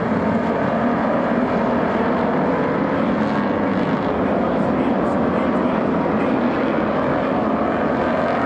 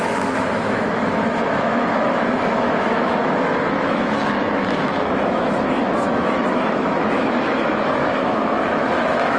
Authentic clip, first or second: first